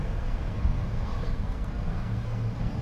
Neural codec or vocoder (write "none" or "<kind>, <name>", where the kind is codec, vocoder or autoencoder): codec, SNAC